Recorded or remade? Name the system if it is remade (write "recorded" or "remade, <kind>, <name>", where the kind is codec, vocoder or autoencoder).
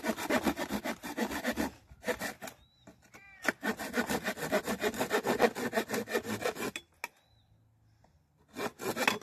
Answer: recorded